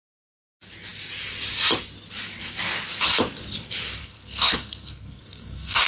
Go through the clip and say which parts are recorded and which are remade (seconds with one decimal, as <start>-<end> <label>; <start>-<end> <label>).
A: 0.0-4.0 recorded; 4.0-5.9 remade